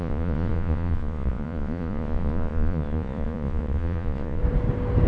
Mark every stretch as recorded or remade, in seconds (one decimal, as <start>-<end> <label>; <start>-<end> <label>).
0.0-4.4 remade; 4.4-5.1 recorded